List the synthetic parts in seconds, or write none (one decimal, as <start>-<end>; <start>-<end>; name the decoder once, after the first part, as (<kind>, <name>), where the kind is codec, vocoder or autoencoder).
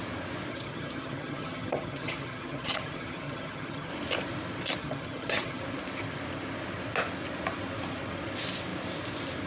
0.5-3.9 (vocoder, HiFi-GAN); 4.8-5.6